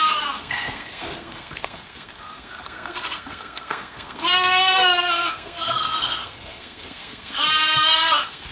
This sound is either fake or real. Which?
fake